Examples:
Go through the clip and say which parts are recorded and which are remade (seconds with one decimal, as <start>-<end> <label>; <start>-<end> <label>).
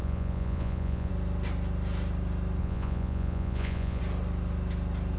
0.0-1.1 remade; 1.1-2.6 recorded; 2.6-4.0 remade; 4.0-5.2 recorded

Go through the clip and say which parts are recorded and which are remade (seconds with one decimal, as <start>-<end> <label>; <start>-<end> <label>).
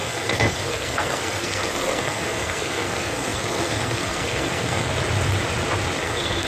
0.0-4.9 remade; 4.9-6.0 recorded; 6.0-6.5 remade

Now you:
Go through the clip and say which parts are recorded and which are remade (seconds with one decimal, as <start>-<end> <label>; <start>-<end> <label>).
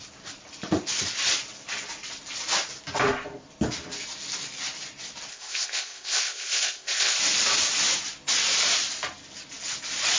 0.0-5.3 recorded; 5.3-7.2 remade; 7.2-10.2 recorded